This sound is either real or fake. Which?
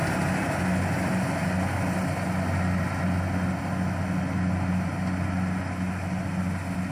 real